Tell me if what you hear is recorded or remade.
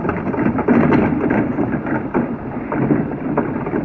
recorded